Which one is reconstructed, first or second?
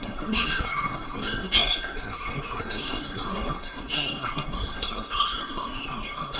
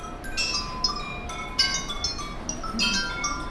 first